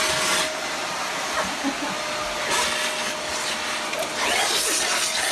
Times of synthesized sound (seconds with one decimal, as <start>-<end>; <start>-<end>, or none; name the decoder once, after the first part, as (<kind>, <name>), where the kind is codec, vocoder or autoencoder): none